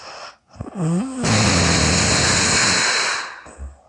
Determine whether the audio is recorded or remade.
recorded